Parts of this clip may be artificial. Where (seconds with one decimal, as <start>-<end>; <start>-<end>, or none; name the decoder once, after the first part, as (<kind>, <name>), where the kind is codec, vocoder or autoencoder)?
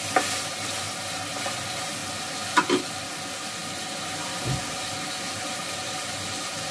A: none